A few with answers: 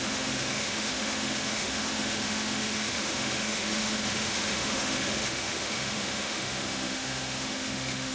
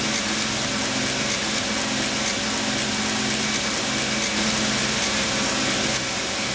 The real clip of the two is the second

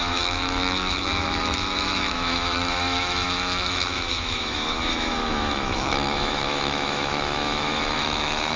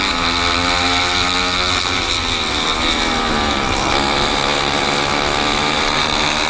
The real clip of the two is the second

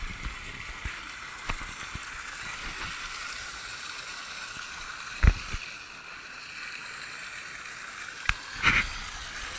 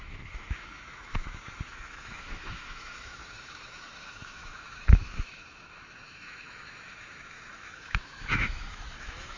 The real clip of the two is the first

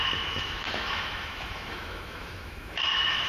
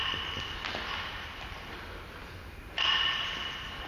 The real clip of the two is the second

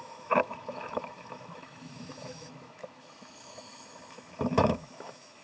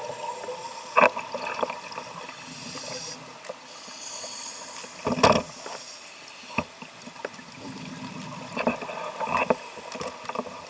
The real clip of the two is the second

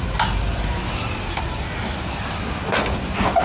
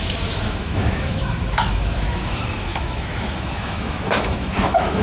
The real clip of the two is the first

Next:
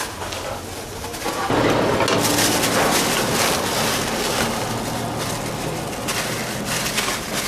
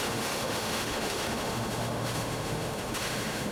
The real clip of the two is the first